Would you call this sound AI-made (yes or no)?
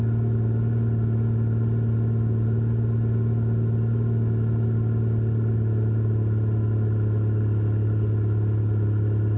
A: no